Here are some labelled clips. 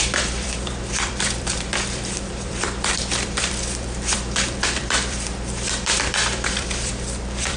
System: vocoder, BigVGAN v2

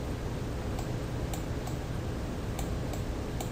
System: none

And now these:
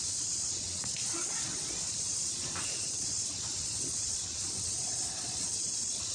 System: vocoder, Vocos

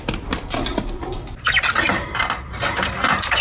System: none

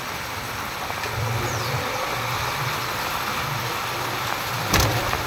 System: none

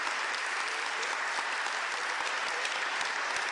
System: none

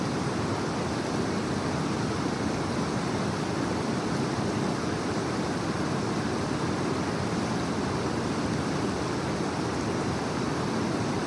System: none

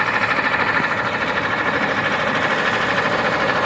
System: vocoder, BigVGAN v2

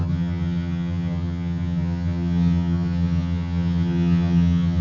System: vocoder, HiFi-GAN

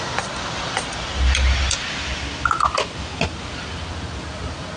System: none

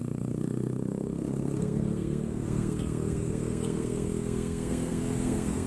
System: codec, SNAC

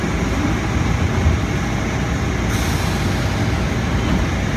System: none